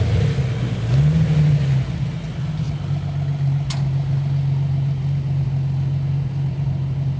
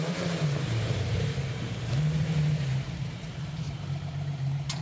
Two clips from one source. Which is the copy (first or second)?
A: second